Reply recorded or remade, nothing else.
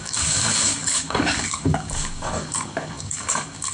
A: remade